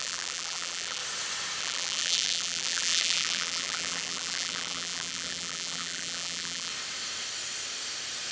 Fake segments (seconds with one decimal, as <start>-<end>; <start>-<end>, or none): 0.0-1.0; 1.6-6.7